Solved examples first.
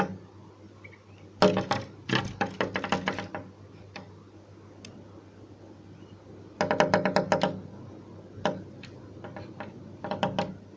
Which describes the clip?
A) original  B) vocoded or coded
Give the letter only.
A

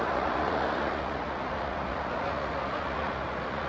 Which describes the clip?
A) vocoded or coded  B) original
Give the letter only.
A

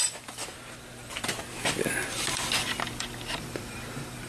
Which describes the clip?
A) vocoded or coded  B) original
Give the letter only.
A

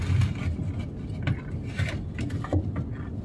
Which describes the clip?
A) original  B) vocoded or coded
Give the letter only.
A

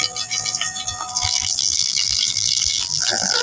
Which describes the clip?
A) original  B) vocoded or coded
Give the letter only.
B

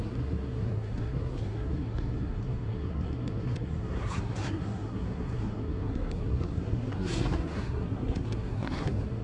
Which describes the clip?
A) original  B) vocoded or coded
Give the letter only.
B